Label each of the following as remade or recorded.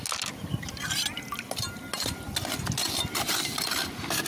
recorded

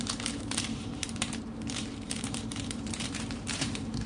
remade